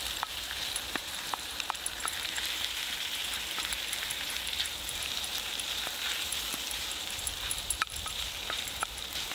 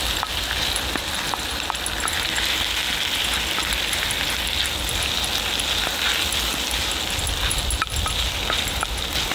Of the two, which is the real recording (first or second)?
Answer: second